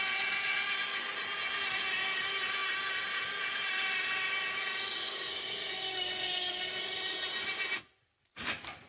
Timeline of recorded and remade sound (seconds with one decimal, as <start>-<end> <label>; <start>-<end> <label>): 0.0-5.0 recorded; 5.0-6.8 remade; 6.8-8.9 recorded